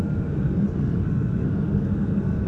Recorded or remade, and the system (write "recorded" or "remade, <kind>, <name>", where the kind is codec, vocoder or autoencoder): remade, codec, SNAC